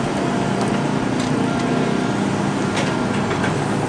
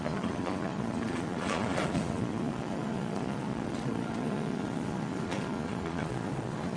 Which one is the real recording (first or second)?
first